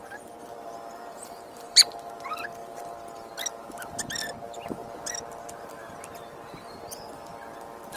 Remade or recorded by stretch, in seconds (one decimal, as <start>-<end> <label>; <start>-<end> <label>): 0.0-1.1 recorded; 1.1-2.1 remade; 2.1-8.0 recorded